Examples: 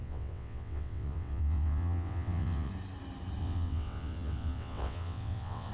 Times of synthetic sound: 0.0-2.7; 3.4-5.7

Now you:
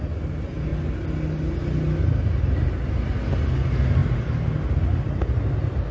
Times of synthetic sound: none